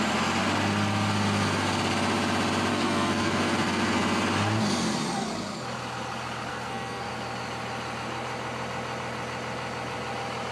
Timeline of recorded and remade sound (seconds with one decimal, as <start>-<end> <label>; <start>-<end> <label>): 0.0-2.7 recorded; 2.7-4.0 remade; 4.0-6.5 recorded; 6.5-7.1 remade; 7.1-10.5 recorded